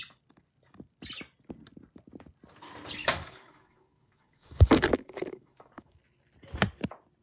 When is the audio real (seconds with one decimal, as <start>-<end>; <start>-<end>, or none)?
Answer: 0.0-3.0; 6.0-7.2